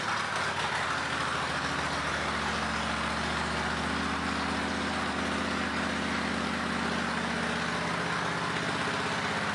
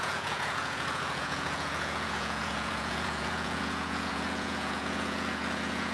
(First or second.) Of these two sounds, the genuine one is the first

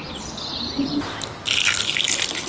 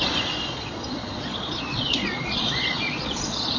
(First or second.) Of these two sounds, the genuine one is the first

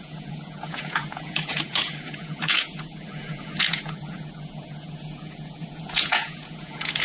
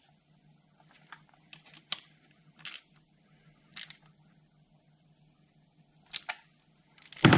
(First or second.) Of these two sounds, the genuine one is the second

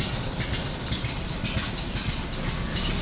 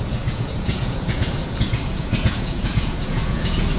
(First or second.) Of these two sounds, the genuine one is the first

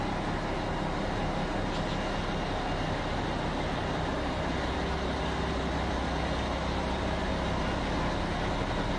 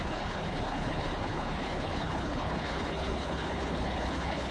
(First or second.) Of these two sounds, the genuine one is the first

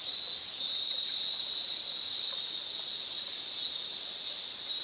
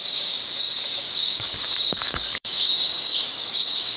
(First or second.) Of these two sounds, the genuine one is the first